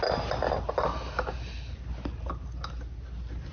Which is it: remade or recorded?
recorded